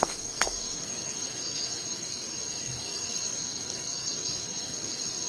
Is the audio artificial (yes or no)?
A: yes